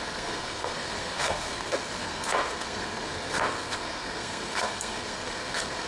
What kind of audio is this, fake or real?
fake